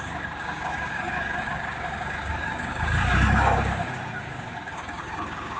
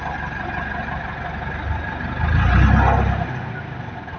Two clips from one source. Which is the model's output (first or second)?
first